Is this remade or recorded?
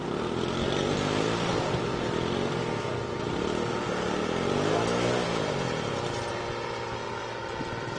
recorded